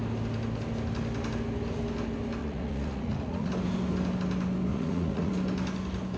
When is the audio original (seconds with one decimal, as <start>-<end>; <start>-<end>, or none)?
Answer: 0.0-2.4; 3.5-4.7; 5.3-6.2

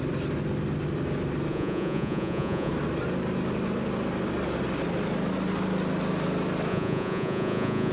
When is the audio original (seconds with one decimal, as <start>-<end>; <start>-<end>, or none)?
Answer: 0.0-1.5; 2.7-6.7